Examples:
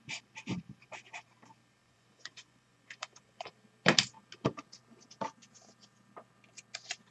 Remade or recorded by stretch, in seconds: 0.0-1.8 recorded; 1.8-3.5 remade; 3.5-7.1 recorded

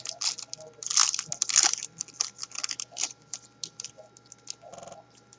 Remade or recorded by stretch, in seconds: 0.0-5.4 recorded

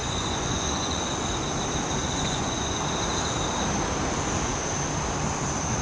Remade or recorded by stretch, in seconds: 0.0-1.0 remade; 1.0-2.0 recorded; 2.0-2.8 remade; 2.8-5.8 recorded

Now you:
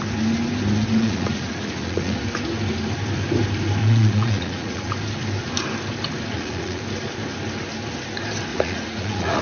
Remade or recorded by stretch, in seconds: 0.0-1.0 recorded; 1.0-2.2 remade; 2.2-3.8 recorded; 3.8-4.9 remade; 4.9-6.3 recorded; 6.3-6.8 remade; 6.8-8.5 recorded; 8.5-9.4 remade

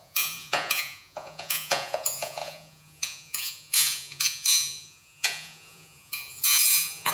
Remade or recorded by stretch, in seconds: 0.0-7.1 remade

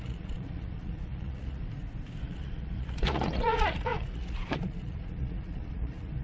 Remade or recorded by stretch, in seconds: 0.0-1.6 remade; 1.6-2.2 recorded; 2.2-6.2 remade

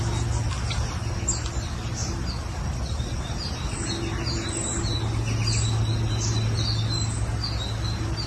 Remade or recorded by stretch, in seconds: 0.0-8.3 recorded